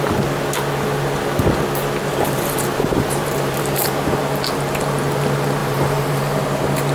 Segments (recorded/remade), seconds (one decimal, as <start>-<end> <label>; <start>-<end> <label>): 0.0-2.1 recorded; 2.1-4.2 remade; 4.2-5.6 recorded; 5.6-6.4 remade; 6.4-6.9 recorded